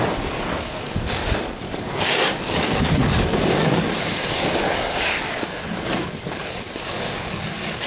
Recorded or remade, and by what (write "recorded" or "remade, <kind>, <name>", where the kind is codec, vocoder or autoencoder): remade, codec, DAC